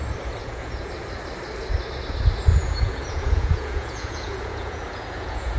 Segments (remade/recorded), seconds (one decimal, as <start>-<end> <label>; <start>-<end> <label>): 0.0-0.4 recorded; 0.4-0.9 remade; 0.9-2.5 recorded; 2.5-5.6 remade